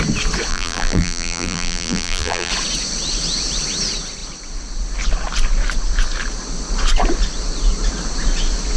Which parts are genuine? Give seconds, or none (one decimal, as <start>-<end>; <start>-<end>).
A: 0.0-0.5; 2.5-8.8